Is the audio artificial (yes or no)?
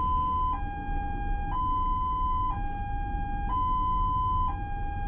no